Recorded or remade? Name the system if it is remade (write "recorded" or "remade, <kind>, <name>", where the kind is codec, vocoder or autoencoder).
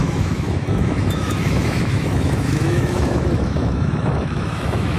remade, autoencoder, DAC-VAE